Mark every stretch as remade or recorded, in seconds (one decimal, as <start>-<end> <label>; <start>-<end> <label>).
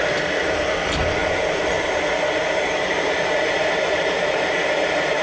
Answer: 0.0-1.2 recorded; 1.2-2.0 remade; 2.0-2.4 recorded; 2.4-5.2 remade